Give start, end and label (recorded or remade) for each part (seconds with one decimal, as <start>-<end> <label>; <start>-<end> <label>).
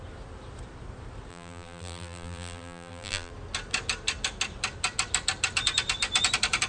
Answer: 0.0-1.3 recorded; 1.3-3.3 remade; 3.3-6.7 recorded